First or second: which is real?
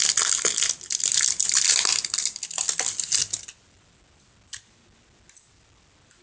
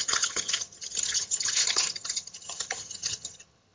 first